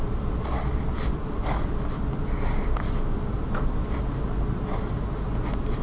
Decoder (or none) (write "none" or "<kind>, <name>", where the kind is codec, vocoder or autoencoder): none